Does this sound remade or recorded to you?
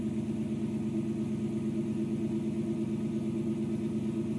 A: recorded